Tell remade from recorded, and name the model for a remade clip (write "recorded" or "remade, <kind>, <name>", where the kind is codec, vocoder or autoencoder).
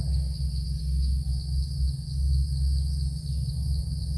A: recorded